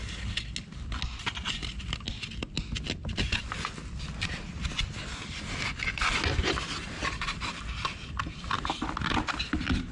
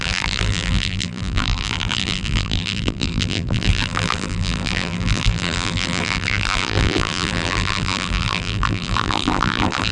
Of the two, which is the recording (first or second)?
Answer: first